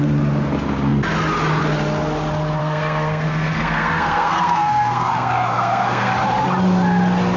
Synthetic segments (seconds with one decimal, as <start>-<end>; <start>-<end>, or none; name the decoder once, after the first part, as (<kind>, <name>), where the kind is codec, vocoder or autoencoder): 2.6-6.1 (codec, SNAC)